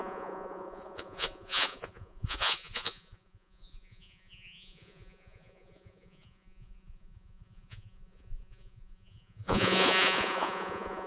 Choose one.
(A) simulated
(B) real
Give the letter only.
A